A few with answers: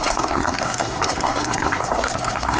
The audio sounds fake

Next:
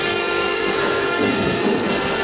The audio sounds fake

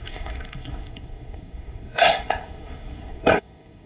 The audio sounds fake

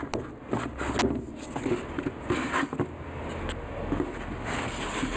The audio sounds real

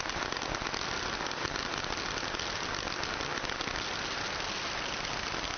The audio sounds real